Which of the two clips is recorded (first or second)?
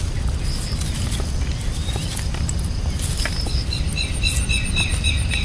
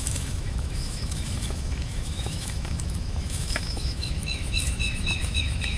first